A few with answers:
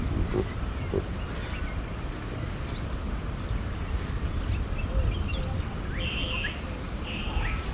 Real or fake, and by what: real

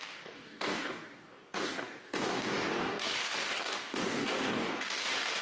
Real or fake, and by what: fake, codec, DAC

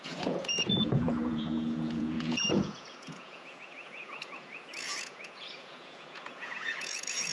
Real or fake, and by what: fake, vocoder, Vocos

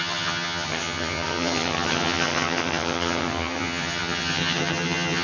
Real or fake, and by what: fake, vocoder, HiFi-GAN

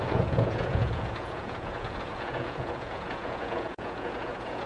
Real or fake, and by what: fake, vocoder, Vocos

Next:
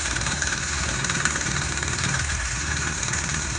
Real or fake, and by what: fake, codec, SNAC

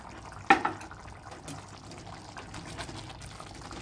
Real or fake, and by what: real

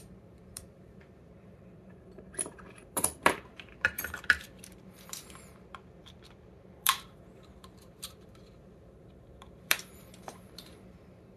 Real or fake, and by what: fake, vocoder, BigVGAN v2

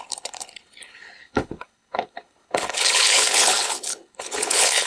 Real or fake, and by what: fake, codec, HILCodec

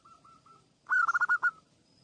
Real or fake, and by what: real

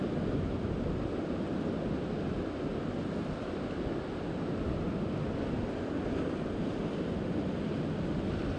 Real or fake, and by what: real